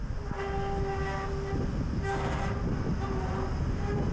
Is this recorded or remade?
recorded